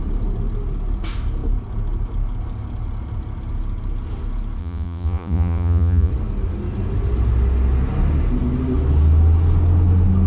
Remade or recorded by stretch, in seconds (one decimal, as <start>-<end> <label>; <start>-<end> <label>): 0.0-4.6 recorded; 4.6-6.1 remade; 6.1-10.3 recorded